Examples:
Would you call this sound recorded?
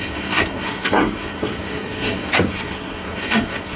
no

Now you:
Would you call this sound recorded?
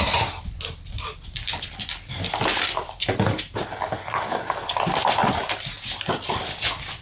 no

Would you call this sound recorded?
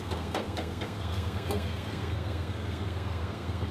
no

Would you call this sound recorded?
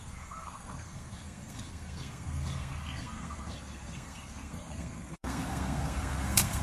no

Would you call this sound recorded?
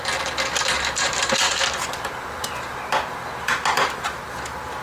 yes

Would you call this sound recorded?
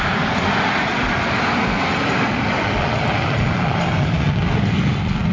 no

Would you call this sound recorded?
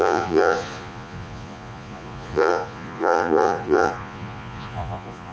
no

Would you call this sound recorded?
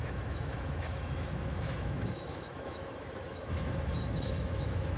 no